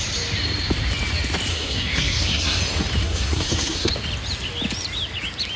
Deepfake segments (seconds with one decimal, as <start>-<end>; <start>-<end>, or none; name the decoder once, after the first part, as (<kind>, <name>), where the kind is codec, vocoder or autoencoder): 1.5-2.6 (codec, SNAC); 3.0-3.9